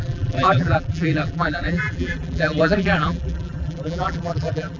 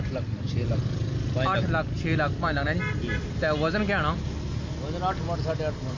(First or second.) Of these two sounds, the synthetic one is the first